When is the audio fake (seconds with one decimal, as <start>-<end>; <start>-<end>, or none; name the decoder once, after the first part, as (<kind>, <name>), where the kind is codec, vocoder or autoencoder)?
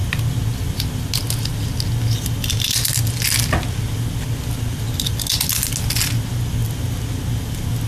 none